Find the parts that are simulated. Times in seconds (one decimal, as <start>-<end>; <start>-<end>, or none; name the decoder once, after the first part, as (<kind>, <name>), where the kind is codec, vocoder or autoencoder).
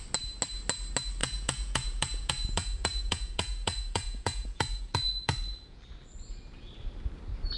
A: 1.2-5.8 (vocoder, Vocos)